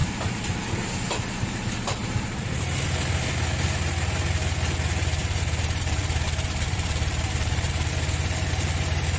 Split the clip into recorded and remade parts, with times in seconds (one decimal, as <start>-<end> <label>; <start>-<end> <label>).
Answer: 0.0-0.8 remade; 0.8-2.0 recorded; 2.0-2.8 remade; 2.8-5.2 recorded; 5.2-7.9 remade; 7.9-9.2 recorded